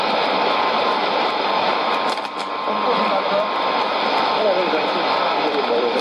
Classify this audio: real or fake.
fake